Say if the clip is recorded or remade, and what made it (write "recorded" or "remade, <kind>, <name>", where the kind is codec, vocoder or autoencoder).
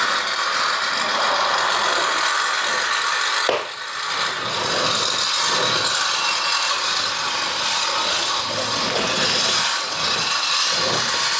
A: recorded